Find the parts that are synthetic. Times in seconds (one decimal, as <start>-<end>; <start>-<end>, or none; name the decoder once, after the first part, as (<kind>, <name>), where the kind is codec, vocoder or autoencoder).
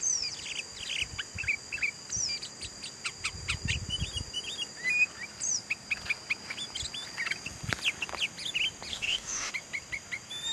8.9-9.5 (autoencoder, DAC-VAE)